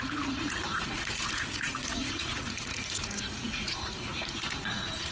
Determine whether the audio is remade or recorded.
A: remade